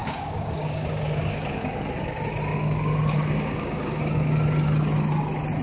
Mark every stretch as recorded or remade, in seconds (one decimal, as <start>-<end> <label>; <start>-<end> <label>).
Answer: 0.0-1.9 remade; 1.9-2.5 recorded; 2.5-4.3 remade; 4.3-5.6 recorded